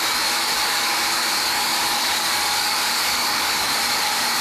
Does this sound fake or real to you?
fake